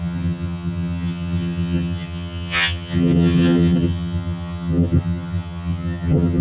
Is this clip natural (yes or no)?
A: no